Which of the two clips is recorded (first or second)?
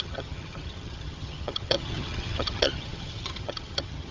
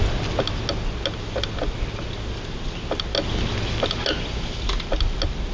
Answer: second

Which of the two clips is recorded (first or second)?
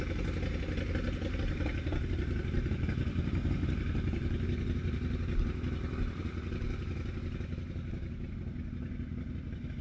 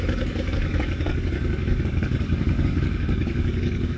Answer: first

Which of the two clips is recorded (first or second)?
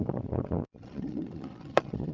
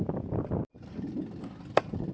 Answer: second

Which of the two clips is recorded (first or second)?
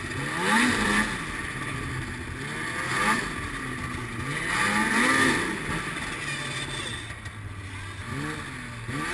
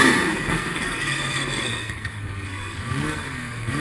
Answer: first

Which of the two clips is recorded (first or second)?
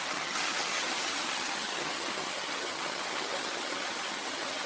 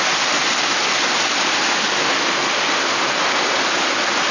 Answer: second